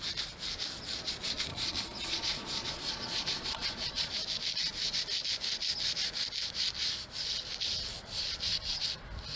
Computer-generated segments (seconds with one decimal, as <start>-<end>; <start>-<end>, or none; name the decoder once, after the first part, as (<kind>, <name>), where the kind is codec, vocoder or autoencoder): 1.5-4.1 (vocoder, Vocos)